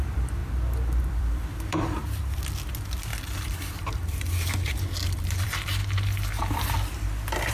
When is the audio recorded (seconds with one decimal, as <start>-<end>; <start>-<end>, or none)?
0.4-1.0; 5.8-7.5